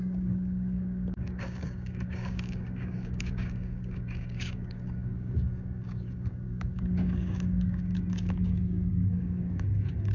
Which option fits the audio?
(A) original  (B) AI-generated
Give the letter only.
B